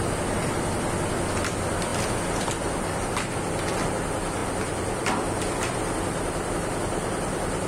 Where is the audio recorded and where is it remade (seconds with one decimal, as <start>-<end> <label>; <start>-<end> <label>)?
0.0-7.7 recorded